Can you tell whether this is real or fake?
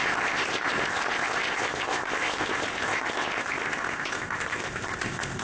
fake